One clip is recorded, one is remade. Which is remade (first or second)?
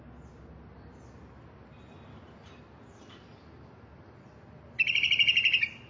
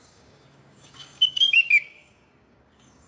second